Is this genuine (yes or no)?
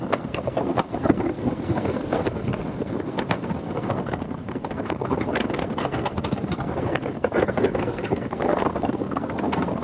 no